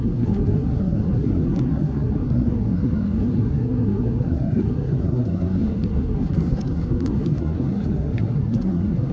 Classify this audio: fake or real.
fake